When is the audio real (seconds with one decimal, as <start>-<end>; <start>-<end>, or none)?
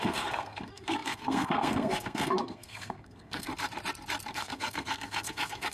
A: 3.5-4.3